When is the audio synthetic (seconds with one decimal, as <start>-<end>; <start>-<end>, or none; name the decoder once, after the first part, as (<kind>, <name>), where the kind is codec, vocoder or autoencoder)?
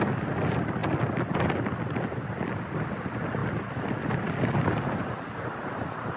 none